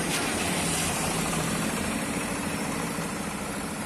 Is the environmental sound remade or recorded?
remade